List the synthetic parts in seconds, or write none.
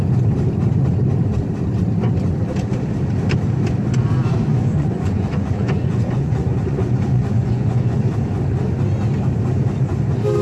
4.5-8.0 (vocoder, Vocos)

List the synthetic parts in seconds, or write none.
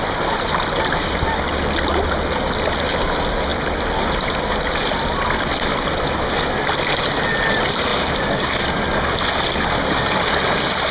none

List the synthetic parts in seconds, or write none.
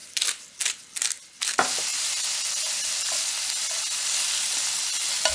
none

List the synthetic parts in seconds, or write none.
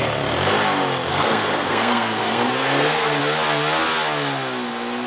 1.1-3.2 (codec, SNAC)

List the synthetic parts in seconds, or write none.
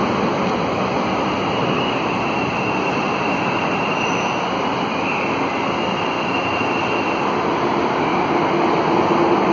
none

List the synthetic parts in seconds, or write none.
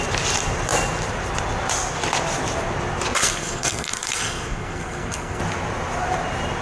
3.2-5.4 (codec, SNAC)